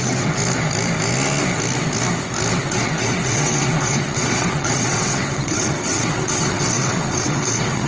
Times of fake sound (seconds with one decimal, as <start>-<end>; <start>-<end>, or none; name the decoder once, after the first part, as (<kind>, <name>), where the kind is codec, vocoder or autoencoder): 0.0-0.4 (vocoder, WaveNeXt); 2.5-7.9

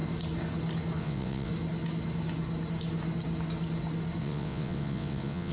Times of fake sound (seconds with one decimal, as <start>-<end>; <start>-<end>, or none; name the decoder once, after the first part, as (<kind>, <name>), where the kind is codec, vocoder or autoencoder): 1.0-1.5 (vocoder, WaveNeXt); 4.2-5.5